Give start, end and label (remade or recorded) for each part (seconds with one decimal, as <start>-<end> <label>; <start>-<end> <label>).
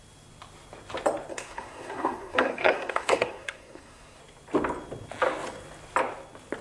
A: 0.0-1.3 recorded; 1.3-4.2 remade; 4.2-6.6 recorded